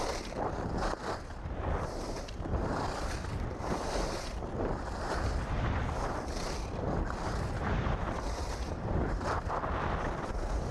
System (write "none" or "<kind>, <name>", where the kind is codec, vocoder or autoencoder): vocoder, BigVGAN v2